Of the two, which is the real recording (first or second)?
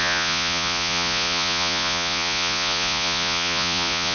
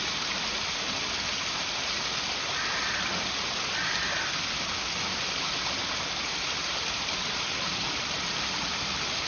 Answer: second